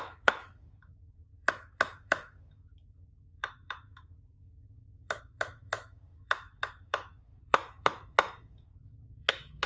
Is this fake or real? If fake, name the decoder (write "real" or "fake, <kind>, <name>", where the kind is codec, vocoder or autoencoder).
fake, autoencoder, DAC-VAE